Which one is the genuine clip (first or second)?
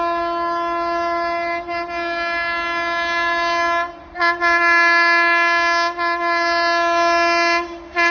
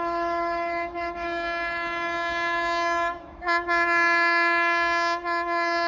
first